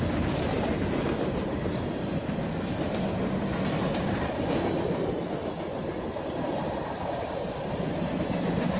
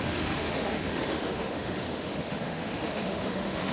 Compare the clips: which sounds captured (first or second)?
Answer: first